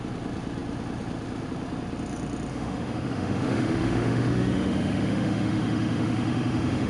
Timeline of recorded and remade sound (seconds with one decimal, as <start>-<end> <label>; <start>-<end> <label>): 0.0-2.5 recorded; 2.5-6.9 remade

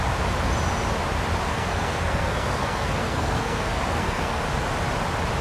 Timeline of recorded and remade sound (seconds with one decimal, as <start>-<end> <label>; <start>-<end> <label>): 0.0-1.5 recorded; 1.5-4.4 remade; 4.4-5.4 recorded